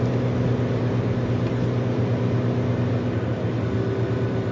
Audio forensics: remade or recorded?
recorded